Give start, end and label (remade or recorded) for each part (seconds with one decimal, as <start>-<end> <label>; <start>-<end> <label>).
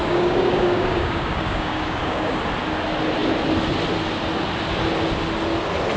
0.0-2.4 remade; 2.4-6.0 recorded